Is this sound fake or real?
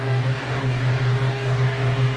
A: fake